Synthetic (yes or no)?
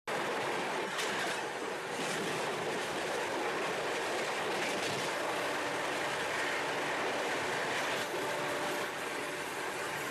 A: no